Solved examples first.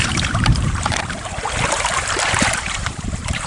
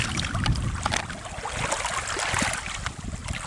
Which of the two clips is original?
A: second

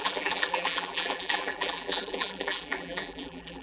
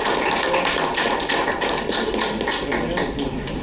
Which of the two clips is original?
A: second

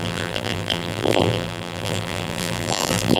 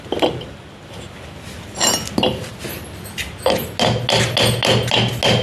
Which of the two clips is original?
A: second